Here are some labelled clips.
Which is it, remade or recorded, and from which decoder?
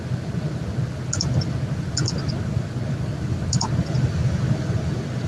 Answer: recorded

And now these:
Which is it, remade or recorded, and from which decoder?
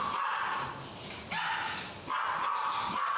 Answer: recorded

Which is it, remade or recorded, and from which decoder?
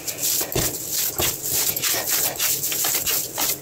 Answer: recorded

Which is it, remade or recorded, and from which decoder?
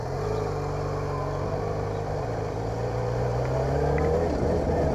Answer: recorded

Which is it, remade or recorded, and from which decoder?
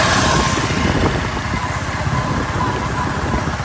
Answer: recorded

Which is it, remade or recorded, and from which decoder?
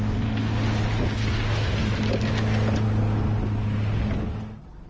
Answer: recorded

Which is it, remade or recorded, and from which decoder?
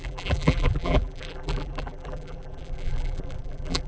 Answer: remade, vocoder, BigVGAN v2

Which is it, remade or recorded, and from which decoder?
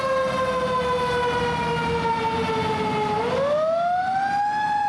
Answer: recorded